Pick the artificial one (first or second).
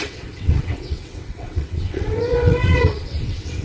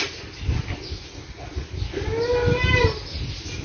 first